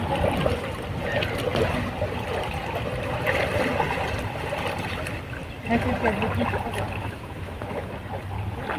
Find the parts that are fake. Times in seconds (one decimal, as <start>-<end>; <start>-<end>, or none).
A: 7.0-7.9